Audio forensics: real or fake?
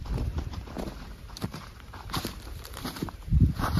fake